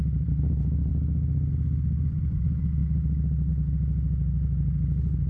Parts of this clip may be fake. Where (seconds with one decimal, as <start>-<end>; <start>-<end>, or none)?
none

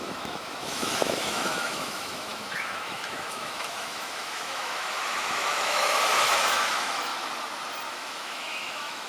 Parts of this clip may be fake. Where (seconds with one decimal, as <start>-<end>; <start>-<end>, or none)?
0.0-7.1; 7.9-9.1